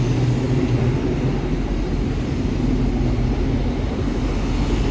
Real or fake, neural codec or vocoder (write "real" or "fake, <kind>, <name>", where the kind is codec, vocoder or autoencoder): real